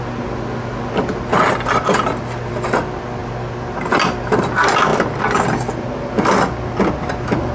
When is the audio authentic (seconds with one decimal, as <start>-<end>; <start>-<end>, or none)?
0.0-7.5